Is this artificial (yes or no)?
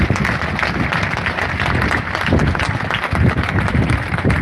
no